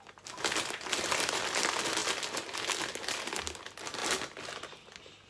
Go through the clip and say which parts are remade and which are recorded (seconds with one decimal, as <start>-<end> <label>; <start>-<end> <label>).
0.0-5.3 recorded